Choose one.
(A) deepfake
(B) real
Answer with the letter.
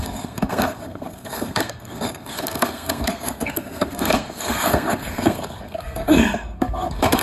A